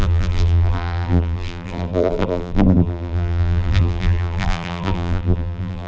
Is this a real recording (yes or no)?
no